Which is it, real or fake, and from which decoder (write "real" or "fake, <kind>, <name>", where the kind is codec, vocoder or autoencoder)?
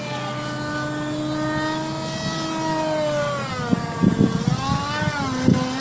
real